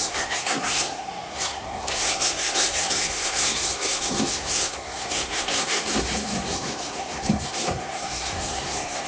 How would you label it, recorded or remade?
remade